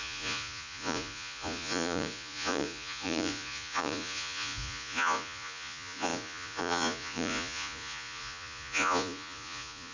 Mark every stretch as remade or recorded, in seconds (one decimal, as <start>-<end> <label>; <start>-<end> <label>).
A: 0.0-9.9 remade